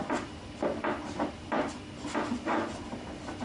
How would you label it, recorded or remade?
recorded